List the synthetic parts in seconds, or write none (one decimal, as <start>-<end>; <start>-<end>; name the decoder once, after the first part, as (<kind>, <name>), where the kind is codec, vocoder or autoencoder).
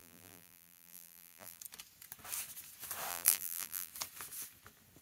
0.0-1.6 (vocoder, BigVGAN v2); 3.1-3.9